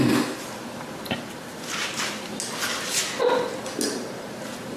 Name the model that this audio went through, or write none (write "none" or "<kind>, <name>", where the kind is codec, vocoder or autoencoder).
none